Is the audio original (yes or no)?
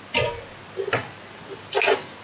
yes